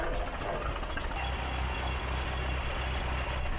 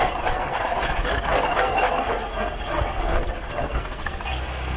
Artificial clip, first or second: second